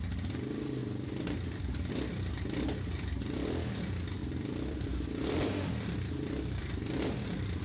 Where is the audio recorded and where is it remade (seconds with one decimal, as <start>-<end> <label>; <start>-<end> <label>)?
0.0-0.8 recorded; 0.8-1.9 remade; 1.9-4.2 recorded; 4.2-7.6 remade